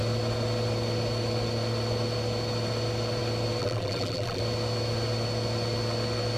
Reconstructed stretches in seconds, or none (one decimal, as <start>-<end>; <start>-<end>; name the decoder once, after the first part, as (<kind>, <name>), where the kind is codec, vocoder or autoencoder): 3.6-4.4 (vocoder, BigVGAN v2)